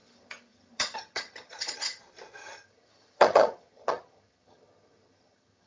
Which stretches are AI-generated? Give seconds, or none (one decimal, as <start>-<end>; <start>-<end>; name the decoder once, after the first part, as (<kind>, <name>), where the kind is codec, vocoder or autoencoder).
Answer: 0.0-2.0 (vocoder, HiFi-GAN); 2.4-5.7